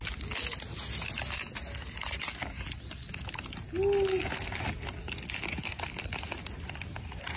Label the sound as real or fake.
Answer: real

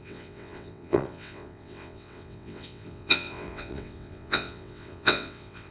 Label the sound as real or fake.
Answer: fake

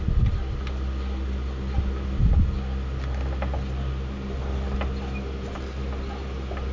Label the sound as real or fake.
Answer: real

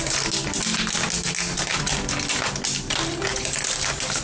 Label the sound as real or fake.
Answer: real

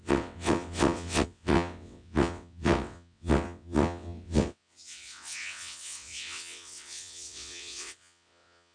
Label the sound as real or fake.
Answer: fake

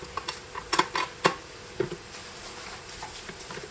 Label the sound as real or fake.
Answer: real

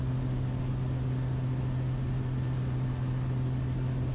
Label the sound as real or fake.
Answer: real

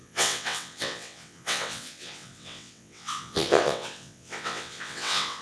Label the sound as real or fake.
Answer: fake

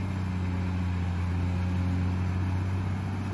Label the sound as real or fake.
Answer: real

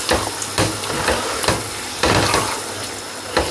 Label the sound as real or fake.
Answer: real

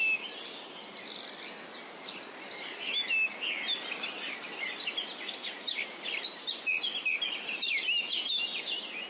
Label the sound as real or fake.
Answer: real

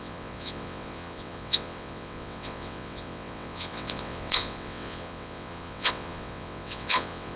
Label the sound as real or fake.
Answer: fake